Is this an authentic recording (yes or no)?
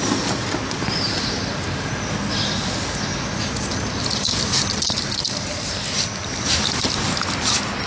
yes